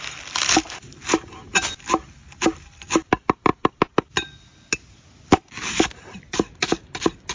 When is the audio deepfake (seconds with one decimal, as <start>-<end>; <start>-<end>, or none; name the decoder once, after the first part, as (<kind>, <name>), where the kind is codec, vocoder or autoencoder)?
none